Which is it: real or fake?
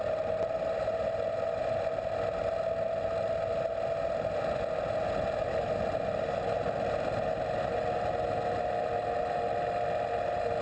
real